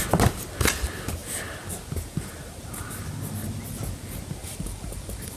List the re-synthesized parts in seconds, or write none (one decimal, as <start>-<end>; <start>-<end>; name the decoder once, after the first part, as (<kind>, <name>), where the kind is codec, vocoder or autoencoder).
4.4-5.4 (vocoder, BigVGAN v2)